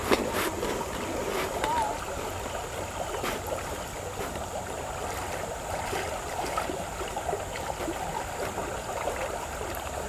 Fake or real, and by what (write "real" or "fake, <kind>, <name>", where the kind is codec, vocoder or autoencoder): real